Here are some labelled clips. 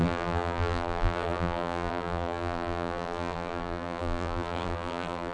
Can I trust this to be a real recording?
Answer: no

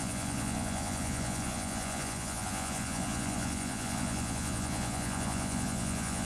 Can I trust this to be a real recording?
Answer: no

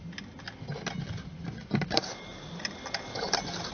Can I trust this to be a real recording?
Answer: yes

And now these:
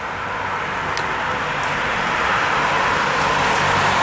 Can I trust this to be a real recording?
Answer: yes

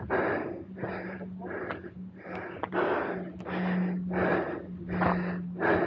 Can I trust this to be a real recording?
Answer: yes